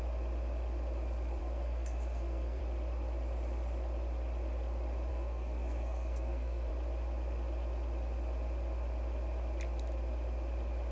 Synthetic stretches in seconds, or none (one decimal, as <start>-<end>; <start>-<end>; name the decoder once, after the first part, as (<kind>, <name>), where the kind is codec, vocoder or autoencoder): 1.4-2.6 (codec, SNAC); 5.1-6.7